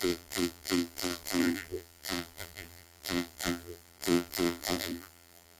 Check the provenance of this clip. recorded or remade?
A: remade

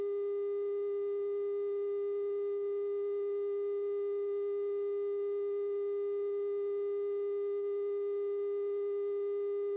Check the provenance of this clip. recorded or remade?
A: recorded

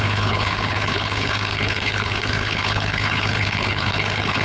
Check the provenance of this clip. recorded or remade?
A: remade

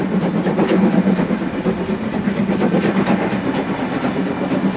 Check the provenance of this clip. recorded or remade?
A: recorded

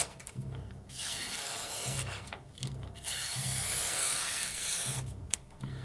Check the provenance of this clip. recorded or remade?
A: remade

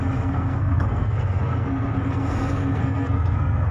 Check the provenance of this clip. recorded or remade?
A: remade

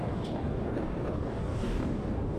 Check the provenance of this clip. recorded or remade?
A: remade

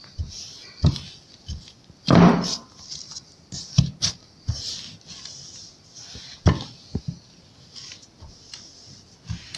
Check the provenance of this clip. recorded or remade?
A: recorded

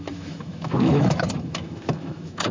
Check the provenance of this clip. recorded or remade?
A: remade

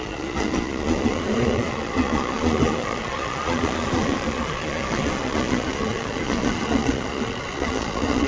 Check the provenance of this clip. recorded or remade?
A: remade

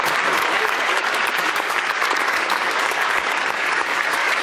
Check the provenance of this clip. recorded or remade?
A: remade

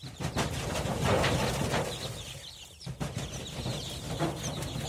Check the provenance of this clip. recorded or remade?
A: recorded